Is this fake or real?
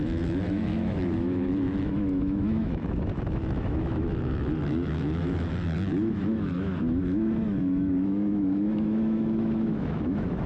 fake